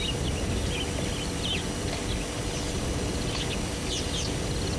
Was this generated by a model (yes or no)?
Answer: no